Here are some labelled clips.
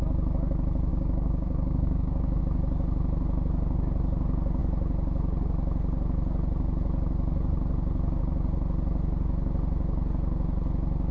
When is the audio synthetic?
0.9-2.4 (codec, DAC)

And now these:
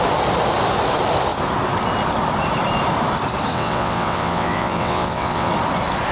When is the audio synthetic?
3.5-5.5 (vocoder, WaveNeXt)

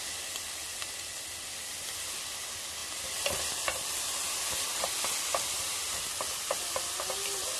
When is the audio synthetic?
2.8-6.7 (vocoder, BigVGAN v2)

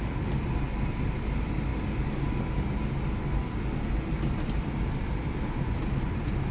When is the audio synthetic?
none